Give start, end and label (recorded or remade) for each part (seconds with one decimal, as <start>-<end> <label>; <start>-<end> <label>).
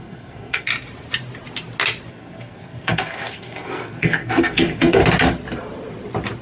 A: 0.0-0.7 remade; 0.7-2.1 recorded; 2.1-5.0 remade; 5.0-6.4 recorded